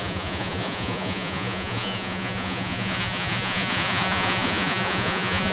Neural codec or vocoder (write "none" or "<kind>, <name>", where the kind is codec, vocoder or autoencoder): vocoder, Vocos